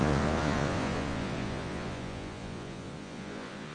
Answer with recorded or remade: remade